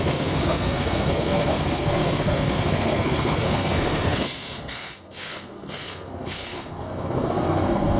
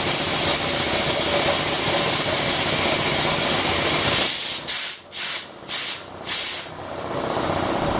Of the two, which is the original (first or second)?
second